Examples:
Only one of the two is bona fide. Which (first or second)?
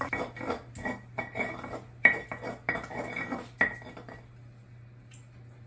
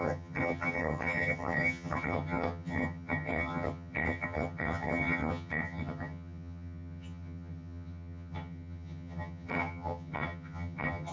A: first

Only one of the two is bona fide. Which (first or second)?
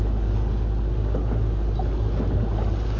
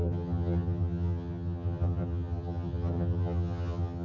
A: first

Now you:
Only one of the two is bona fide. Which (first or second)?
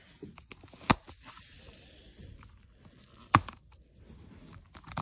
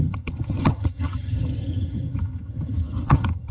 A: first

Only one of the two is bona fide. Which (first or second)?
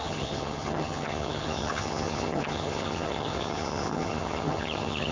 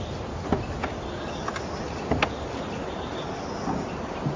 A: second